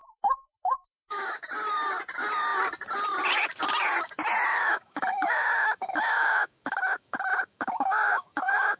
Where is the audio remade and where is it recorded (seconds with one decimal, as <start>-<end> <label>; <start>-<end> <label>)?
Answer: 0.0-1.4 remade; 1.4-4.5 recorded; 4.5-8.8 remade